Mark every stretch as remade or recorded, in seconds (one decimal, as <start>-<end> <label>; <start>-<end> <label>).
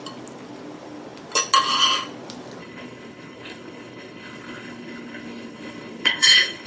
0.0-2.6 recorded; 2.6-6.7 remade